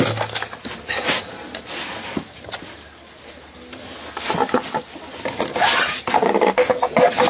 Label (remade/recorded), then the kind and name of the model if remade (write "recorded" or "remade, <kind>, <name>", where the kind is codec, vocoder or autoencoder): recorded